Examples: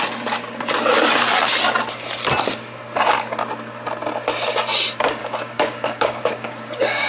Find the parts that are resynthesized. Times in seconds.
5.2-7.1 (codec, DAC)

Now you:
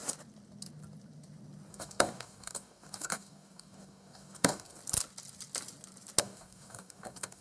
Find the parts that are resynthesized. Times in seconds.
1.7-4.8 (codec, DAC); 6.2-7.4

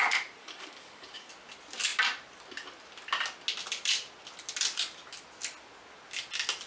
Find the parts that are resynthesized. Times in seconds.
0.4-1.3 (codec, DAC)

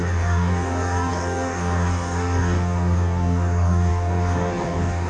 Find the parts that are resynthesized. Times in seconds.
0.0-5.1 (codec, DAC)